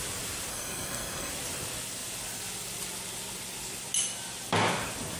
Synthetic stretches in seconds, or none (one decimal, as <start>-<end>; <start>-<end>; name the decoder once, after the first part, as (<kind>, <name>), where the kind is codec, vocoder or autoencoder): 0.5-1.3 (codec, SNAC)